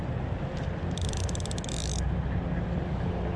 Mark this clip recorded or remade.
recorded